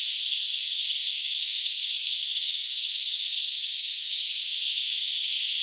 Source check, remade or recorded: remade